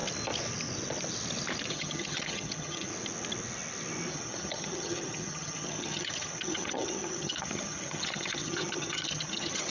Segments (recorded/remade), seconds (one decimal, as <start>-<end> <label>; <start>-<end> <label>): 0.0-1.7 recorded; 1.7-2.9 remade; 2.9-4.1 recorded; 4.1-9.7 remade